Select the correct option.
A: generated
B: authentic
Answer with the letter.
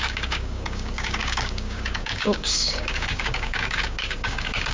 A